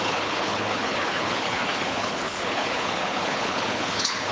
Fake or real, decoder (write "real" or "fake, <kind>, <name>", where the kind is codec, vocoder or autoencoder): fake, codec, HILCodec